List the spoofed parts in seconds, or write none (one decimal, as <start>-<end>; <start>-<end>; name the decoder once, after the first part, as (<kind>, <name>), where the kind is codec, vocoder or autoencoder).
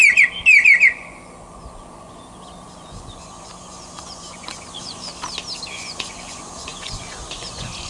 0.8-5.1 (vocoder, Vocos); 5.7-7.9